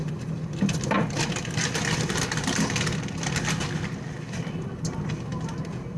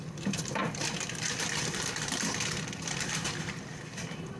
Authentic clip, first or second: first